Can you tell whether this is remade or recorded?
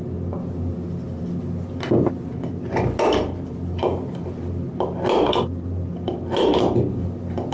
recorded